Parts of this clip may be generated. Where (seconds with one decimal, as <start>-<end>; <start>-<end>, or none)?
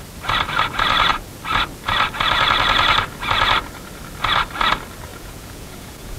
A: 5.1-6.2